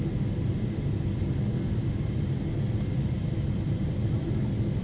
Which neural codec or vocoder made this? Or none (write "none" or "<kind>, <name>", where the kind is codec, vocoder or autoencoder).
none